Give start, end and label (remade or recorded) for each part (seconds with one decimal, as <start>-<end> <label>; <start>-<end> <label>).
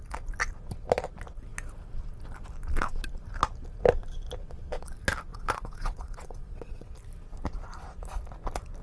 0.0-5.3 recorded; 5.3-6.9 remade; 6.9-8.8 recorded